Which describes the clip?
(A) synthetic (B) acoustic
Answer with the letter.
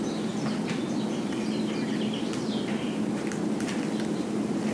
B